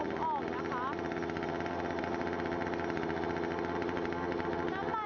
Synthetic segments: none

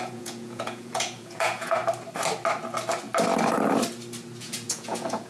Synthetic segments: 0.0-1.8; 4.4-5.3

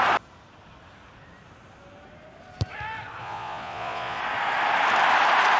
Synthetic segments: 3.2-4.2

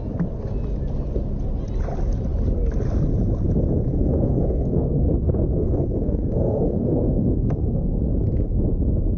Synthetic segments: 3.9-8.0

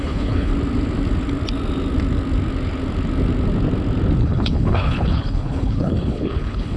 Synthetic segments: 0.0-0.5; 4.2-6.8

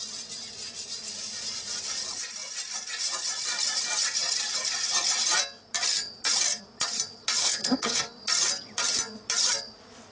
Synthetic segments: 7.4-8.0

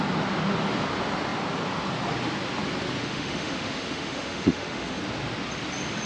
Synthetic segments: 3.0-5.0

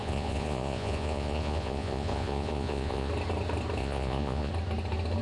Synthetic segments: 0.0-3.1; 3.8-4.5